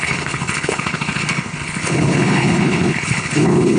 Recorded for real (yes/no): no